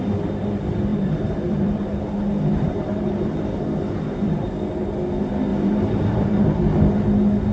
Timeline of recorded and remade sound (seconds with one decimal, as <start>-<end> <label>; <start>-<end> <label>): 0.0-0.9 recorded; 0.9-2.0 remade; 2.0-2.5 recorded; 2.5-4.4 remade; 4.4-5.5 recorded; 5.5-6.8 remade; 6.8-7.5 recorded